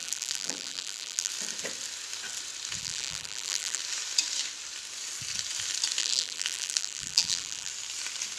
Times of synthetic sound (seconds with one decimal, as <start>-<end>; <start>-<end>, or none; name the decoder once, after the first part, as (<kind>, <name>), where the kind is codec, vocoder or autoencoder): 0.0-1.3 (vocoder, BigVGAN v2); 2.8-3.8; 6.0-7.7

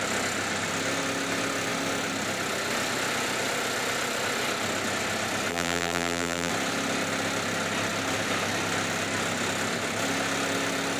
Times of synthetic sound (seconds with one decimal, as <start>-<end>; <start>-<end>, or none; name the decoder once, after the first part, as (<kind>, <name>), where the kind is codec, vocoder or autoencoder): 5.5-6.5 (vocoder, BigVGAN v2)

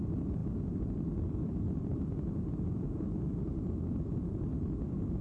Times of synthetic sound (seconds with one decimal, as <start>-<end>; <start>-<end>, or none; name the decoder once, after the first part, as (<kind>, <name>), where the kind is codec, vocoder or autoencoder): 0.0-1.9 (vocoder, BigVGAN v2); 3.4-5.2

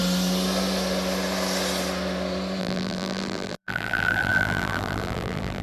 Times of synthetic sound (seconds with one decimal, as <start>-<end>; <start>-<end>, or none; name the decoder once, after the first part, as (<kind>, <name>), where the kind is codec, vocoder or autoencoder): 2.6-5.6 (vocoder, BigVGAN v2)